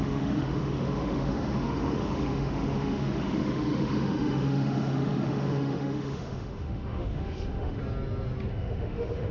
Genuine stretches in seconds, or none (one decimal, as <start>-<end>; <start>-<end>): 7.8-8.5